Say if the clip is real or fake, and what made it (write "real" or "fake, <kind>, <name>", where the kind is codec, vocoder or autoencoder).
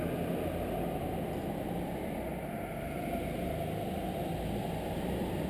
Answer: real